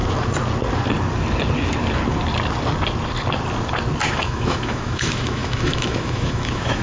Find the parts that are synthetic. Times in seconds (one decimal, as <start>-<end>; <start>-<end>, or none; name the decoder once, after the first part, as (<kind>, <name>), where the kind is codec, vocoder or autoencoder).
4.1-6.8 (autoencoder, DAC-VAE)